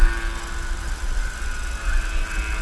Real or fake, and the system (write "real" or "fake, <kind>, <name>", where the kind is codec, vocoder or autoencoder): real